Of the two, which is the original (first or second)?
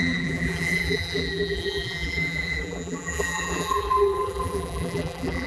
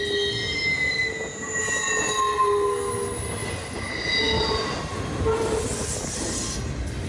second